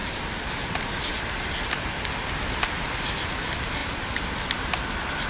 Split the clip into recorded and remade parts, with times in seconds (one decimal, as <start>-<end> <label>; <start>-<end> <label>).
0.0-5.3 recorded